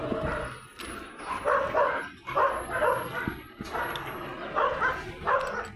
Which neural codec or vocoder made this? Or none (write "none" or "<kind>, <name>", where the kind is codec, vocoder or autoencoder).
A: none